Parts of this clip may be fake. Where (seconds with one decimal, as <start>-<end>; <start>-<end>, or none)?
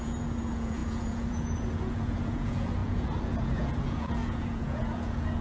0.0-5.4